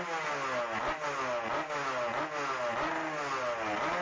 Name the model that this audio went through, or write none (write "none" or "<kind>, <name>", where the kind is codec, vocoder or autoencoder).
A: none